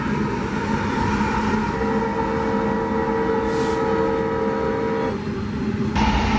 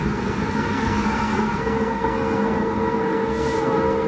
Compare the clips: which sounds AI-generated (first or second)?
second